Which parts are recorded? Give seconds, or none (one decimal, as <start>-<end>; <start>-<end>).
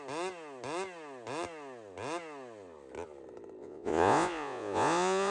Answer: 0.0-3.6